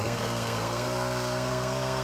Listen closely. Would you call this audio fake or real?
fake